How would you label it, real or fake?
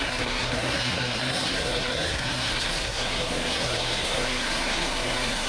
fake